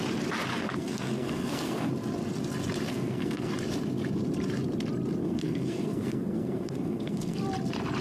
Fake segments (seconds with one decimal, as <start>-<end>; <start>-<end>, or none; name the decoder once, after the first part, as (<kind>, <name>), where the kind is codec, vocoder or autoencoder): 0.5-1.9 (codec, SNAC); 2.9-3.5; 5.2-7.4